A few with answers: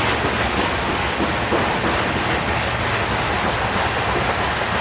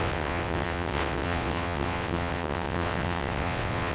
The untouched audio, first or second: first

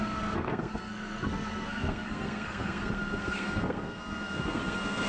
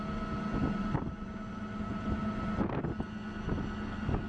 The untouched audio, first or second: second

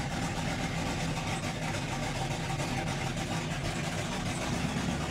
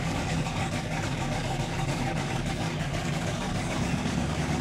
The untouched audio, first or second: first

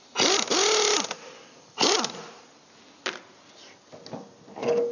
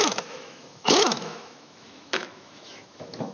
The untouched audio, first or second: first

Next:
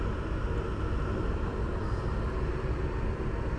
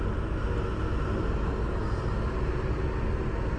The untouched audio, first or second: second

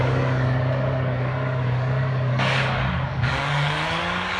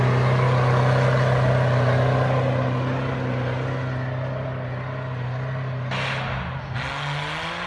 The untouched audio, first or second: second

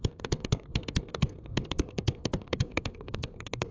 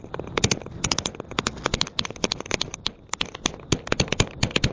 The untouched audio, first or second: second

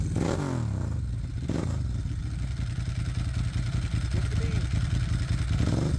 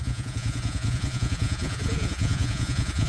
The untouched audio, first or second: first